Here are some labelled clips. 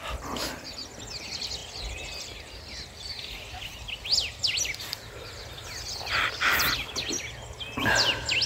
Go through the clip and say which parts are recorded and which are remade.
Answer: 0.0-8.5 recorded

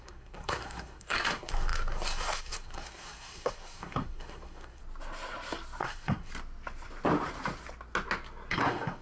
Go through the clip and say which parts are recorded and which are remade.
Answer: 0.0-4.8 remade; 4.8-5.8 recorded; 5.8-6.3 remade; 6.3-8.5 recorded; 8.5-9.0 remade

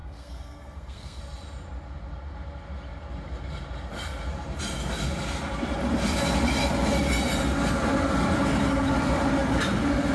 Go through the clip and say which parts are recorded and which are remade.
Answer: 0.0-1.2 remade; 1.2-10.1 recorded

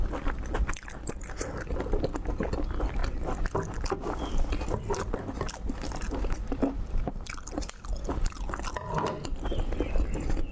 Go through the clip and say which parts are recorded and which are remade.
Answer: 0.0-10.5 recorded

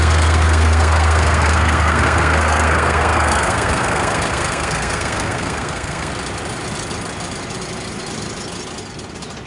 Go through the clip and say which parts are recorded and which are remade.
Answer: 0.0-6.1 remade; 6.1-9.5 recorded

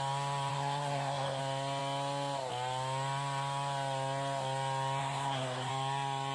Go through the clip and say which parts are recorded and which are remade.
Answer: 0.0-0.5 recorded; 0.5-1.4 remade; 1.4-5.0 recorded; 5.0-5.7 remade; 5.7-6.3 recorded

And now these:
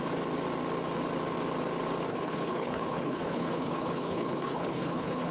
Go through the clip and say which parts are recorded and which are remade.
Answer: 0.0-2.1 recorded; 2.1-5.3 remade

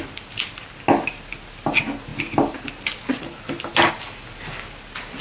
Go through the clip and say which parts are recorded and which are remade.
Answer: 0.0-5.2 recorded